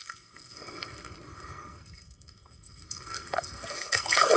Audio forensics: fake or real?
fake